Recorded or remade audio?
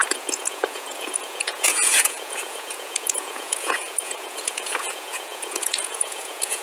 remade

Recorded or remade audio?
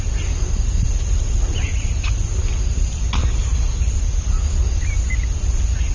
recorded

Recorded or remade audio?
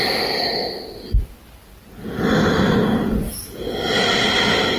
recorded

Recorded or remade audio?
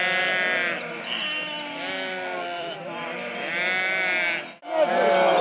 recorded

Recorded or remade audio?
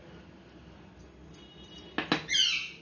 recorded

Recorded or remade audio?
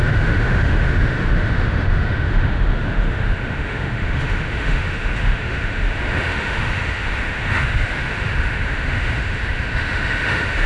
remade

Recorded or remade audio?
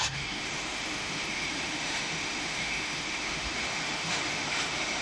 remade